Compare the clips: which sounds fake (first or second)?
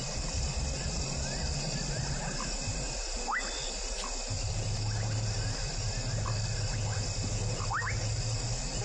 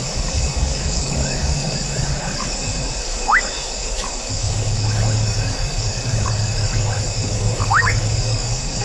second